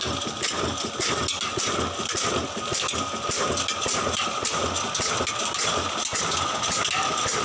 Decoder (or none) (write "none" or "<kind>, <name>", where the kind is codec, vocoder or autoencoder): none